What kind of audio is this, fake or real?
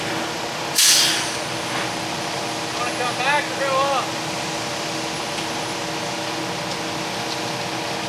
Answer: real